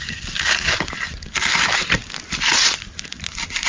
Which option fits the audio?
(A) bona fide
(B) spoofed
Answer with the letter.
A